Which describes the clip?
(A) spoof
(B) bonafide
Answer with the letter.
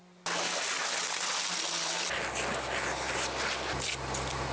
B